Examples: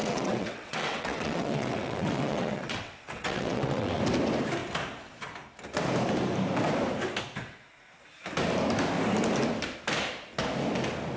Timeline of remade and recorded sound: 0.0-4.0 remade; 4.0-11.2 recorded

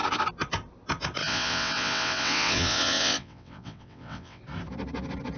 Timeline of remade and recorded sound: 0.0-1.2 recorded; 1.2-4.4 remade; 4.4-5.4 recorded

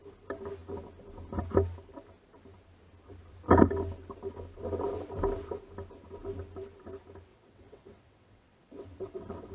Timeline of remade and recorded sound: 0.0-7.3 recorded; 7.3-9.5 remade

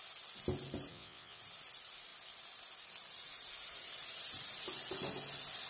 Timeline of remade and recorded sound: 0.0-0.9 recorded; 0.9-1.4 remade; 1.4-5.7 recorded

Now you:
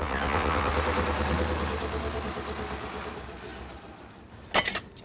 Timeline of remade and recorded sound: 0.0-0.7 remade; 0.7-5.0 recorded

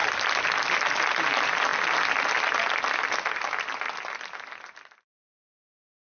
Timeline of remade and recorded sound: 0.0-6.0 recorded

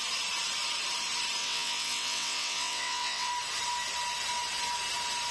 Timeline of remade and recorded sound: 0.0-1.4 recorded; 1.4-3.3 remade; 3.3-5.3 recorded